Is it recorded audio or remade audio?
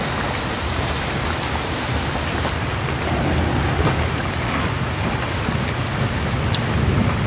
recorded